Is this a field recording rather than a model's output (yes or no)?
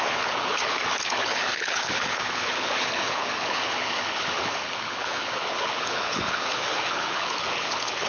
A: no